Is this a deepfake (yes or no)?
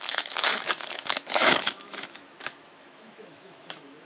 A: yes